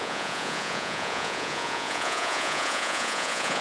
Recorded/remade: remade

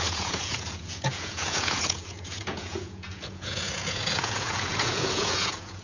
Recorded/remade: remade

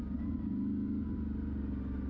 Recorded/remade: recorded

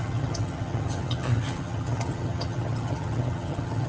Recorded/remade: remade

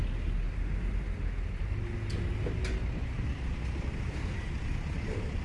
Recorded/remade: recorded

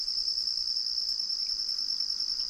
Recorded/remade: recorded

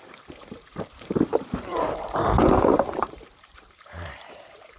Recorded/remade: remade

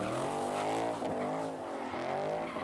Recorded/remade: recorded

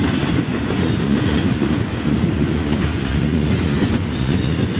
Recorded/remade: remade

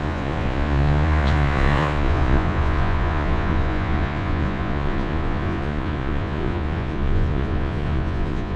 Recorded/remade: remade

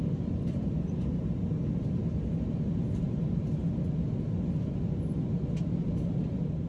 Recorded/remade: recorded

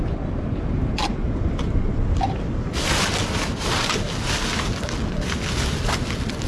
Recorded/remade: recorded